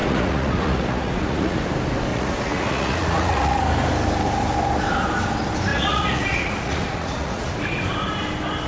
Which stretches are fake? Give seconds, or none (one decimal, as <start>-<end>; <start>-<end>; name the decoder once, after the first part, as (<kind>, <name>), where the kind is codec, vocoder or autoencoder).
0.0-1.6 (vocoder, Vocos); 2.1-3.6; 5.7-7.5